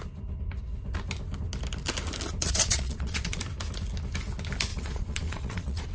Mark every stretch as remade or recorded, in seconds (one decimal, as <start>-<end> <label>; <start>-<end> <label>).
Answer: 0.0-2.4 recorded; 2.4-3.4 remade; 3.4-4.7 recorded; 4.7-5.9 remade